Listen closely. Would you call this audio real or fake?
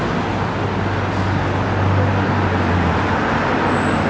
real